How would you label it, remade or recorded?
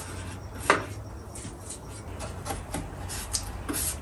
recorded